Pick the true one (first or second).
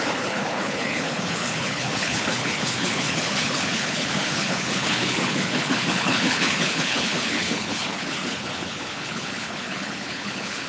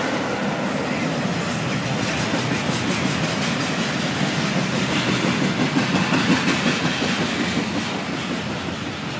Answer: second